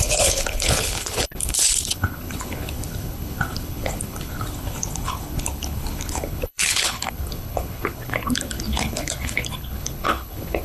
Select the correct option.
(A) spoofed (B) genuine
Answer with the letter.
A